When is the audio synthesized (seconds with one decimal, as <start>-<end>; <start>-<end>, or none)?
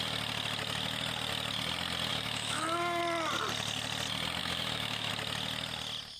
2.1-3.0; 4.4-5.1